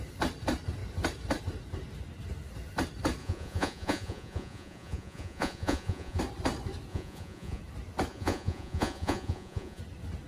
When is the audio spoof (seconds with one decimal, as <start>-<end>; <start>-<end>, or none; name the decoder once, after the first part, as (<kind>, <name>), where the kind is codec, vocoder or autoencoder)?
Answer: 3.2-6.2 (vocoder, Vocos); 6.9-7.6; 8.1-9.8